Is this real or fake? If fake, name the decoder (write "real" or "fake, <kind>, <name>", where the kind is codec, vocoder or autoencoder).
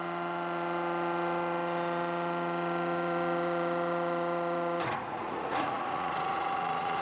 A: fake, vocoder, Vocos